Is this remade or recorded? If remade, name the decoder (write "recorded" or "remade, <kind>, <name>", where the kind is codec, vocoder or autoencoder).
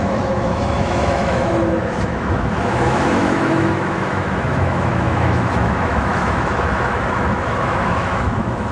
remade, autoencoder, DAC-VAE